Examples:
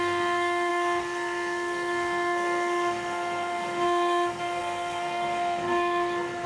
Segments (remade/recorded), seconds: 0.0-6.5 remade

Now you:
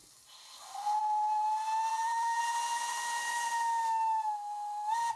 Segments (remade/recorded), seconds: 0.0-1.9 recorded; 1.9-2.4 remade; 2.4-5.2 recorded

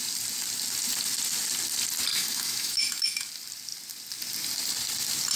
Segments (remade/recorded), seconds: 0.0-2.1 recorded; 2.1-3.3 remade; 3.3-5.4 recorded

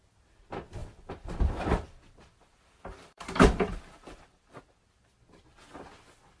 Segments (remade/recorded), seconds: 0.0-0.8 recorded; 0.8-4.6 remade; 4.6-6.4 recorded

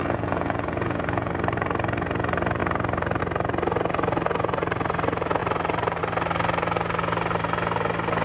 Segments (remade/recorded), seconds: 0.0-1.3 remade; 1.3-8.2 recorded

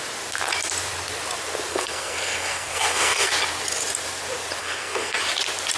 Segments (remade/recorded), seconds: 0.0-1.7 recorded; 1.7-3.3 remade; 3.3-4.6 recorded; 4.6-5.2 remade; 5.2-5.8 recorded

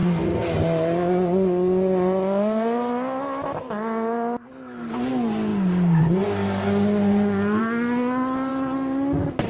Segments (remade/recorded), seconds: 0.0-9.5 recorded

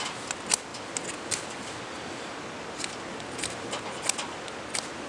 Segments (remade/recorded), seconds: 0.0-5.1 recorded